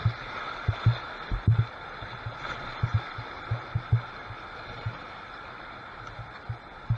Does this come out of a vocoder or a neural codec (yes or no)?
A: no